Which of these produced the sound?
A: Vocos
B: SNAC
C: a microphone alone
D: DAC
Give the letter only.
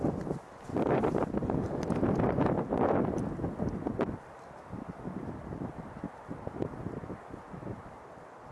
C